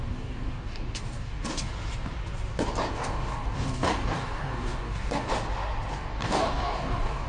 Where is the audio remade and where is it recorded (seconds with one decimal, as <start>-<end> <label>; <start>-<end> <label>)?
0.0-1.7 remade; 1.7-2.9 recorded; 2.9-5.3 remade; 5.3-5.9 recorded; 5.9-7.3 remade